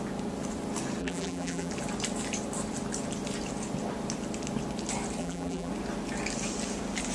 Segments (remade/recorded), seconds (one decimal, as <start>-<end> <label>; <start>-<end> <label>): 0.0-1.0 recorded; 1.0-1.7 remade; 1.7-5.2 recorded; 5.2-5.7 remade; 5.7-7.1 recorded